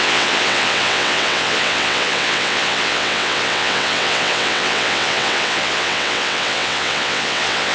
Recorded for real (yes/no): no